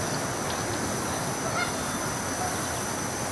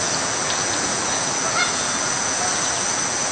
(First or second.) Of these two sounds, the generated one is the second